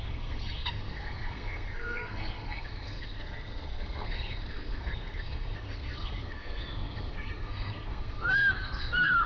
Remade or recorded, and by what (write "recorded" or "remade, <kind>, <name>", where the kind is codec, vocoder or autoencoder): remade, codec, SNAC